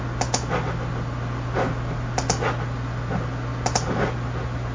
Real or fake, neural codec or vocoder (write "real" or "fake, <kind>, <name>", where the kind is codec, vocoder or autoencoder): real